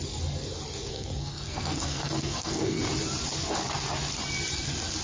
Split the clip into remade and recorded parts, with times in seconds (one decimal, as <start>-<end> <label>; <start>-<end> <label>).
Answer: 0.0-0.9 recorded; 0.9-2.8 remade; 2.8-5.0 recorded